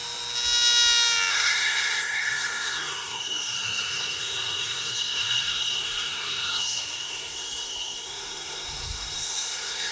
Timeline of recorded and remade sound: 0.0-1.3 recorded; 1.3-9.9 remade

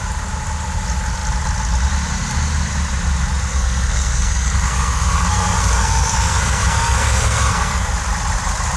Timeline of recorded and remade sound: 0.0-3.5 recorded; 3.5-7.9 remade; 7.9-8.8 recorded